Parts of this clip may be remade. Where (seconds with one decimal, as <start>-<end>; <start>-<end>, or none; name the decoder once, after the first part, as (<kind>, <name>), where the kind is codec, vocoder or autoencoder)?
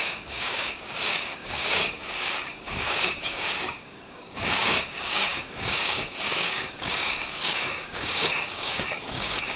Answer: 0.0-9.6 (codec, DAC)